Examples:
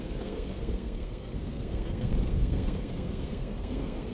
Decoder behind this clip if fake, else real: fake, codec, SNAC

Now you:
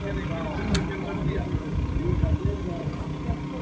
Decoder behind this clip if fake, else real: real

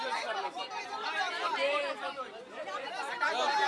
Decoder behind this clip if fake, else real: fake, vocoder, BigVGAN v2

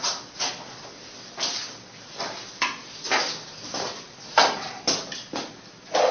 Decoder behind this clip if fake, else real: real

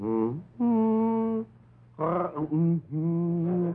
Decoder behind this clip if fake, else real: real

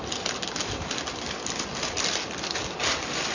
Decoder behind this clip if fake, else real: real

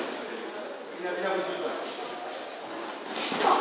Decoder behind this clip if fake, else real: real